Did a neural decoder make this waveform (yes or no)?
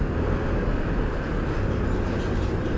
no